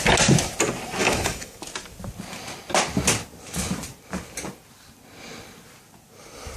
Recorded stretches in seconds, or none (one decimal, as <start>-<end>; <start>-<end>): 0.0-1.0; 1.6-6.6